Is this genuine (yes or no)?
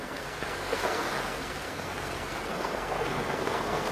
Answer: no